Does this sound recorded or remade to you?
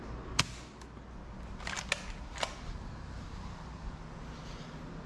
recorded